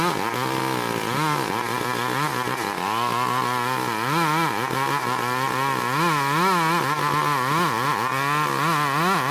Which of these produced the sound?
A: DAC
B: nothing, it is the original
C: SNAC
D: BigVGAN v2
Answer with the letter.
B